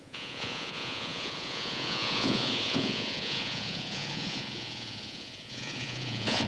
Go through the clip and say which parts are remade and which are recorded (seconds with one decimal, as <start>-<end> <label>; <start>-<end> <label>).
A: 0.0-6.5 remade